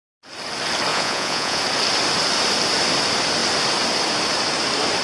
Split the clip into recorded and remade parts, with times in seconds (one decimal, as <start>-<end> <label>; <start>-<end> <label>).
0.0-0.9 recorded; 0.9-1.6 remade; 1.6-5.0 recorded